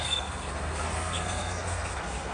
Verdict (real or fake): fake